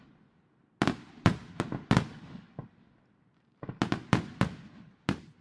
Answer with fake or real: real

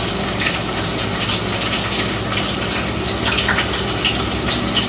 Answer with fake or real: real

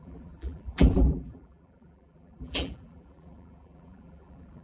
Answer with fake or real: fake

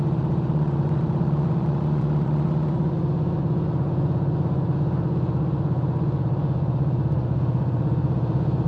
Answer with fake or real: fake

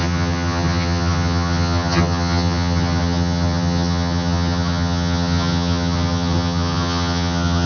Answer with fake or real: fake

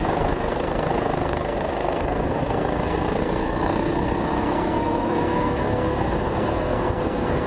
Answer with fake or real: fake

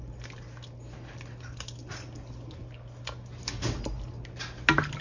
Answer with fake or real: real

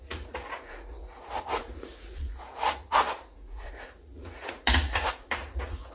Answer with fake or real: fake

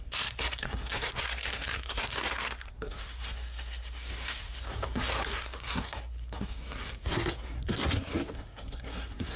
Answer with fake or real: fake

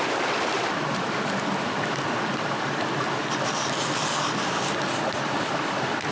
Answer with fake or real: real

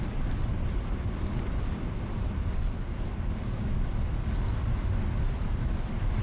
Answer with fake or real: real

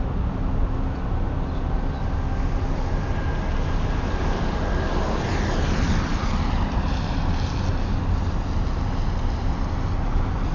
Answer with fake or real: real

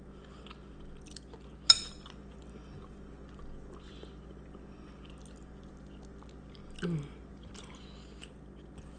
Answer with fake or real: real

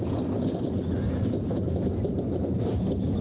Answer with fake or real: real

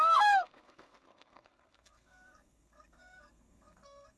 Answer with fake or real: fake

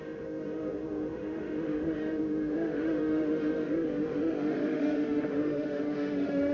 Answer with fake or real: fake